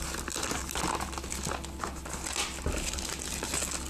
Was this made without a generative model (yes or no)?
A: yes